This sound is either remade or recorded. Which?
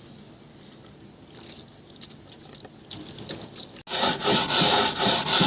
recorded